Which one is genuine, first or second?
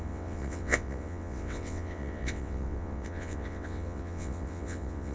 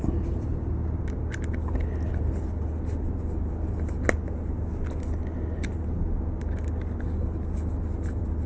second